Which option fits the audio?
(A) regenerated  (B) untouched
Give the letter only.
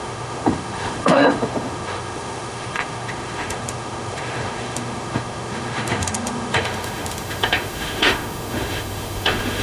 A